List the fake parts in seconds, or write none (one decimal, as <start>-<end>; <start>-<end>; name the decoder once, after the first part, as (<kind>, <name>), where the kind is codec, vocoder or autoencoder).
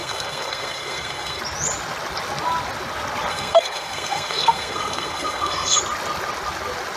0.0-1.4 (codec, SNAC); 3.3-5.8